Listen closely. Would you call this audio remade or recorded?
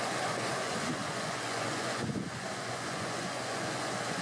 remade